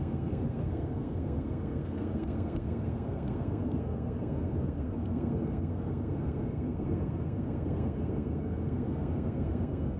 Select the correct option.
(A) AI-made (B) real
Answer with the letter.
A